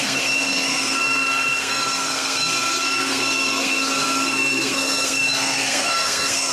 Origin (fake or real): fake